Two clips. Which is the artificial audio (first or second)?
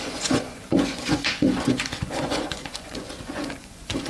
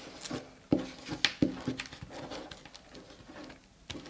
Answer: first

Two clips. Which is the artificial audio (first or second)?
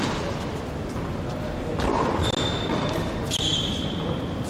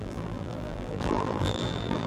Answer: second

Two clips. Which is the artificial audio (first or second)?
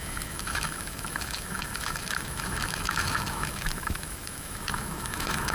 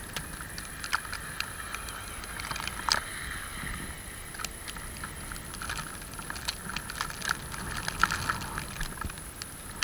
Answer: first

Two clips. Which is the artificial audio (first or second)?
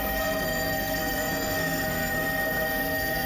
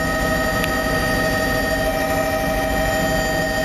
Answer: first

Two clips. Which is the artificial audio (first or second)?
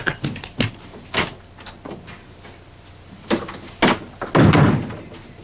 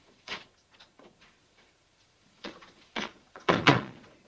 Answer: second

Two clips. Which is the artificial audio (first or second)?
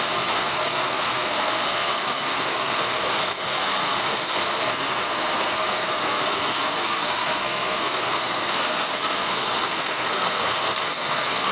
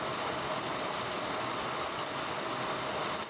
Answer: first